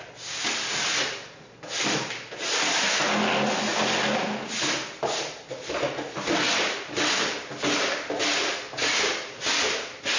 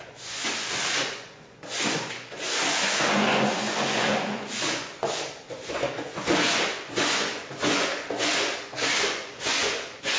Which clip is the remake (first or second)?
second